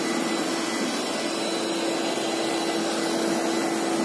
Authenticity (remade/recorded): recorded